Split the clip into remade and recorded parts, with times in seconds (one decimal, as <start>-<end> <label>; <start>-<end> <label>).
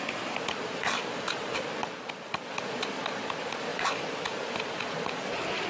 0.0-1.8 recorded; 1.8-2.5 remade; 2.5-3.7 recorded; 3.7-4.7 remade; 4.7-5.7 recorded